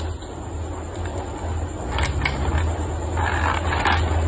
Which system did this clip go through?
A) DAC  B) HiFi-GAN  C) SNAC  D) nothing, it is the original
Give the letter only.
D